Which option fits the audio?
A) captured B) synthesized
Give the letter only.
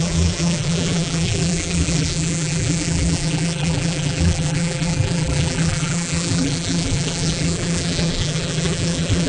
B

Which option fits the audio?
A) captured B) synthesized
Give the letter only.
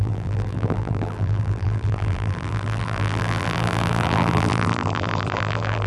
B